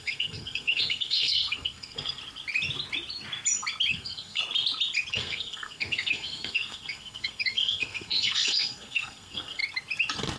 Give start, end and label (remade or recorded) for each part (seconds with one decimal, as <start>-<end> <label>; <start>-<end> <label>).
0.0-2.2 remade; 2.2-3.9 recorded; 3.9-4.4 remade; 4.4-5.1 recorded; 5.1-9.6 remade; 9.6-10.4 recorded